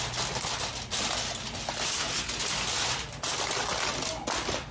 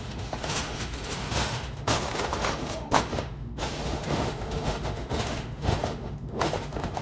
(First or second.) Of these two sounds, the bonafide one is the first